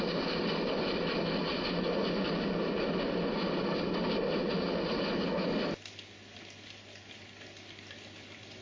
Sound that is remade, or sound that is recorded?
recorded